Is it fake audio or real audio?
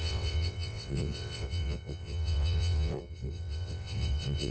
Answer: fake